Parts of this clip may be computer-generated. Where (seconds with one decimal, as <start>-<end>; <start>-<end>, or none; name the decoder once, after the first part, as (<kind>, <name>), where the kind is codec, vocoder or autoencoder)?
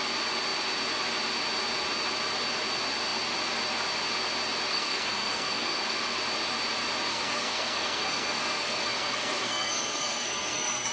4.7-6.2 (codec, SNAC); 7.1-10.9